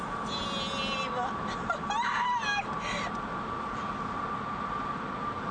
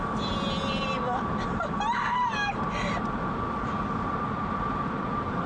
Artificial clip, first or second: second